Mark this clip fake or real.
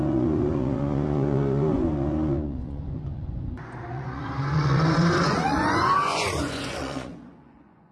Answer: fake